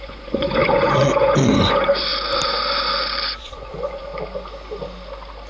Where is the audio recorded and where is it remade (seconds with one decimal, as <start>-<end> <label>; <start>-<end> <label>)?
0.0-2.1 remade; 2.1-3.4 recorded; 3.4-4.1 remade; 4.1-5.5 recorded